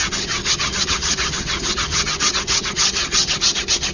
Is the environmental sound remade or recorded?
remade